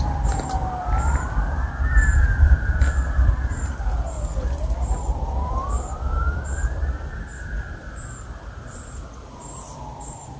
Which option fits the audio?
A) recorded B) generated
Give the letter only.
B